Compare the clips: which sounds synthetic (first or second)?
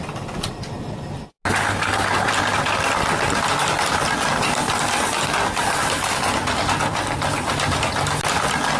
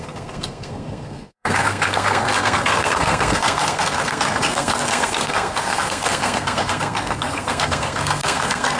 second